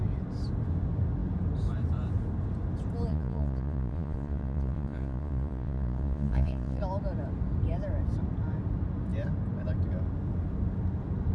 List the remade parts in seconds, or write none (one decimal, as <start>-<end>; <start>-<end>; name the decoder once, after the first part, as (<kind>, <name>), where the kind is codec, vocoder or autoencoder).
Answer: 3.1-6.8 (vocoder, Vocos)